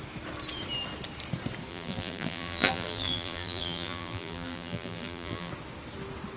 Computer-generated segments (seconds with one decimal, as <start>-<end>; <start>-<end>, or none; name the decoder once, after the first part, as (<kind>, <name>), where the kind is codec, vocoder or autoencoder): 1.7-5.5 (vocoder, BigVGAN v2)